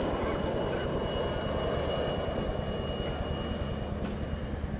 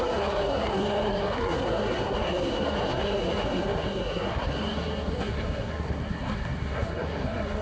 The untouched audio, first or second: first